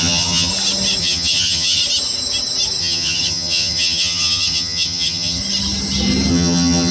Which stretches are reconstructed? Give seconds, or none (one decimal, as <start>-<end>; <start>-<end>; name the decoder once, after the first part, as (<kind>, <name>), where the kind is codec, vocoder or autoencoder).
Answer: 0.0-0.5 (vocoder, HiFi-GAN); 1.0-1.8; 2.8-5.4; 6.3-6.9